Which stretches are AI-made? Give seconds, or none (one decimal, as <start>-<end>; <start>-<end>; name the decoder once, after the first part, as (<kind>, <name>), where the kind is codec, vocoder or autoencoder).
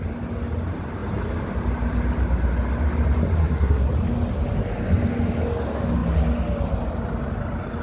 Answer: 3.4-3.9 (codec, SNAC)